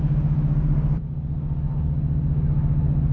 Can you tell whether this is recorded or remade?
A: recorded